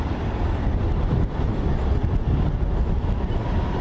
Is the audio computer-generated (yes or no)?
no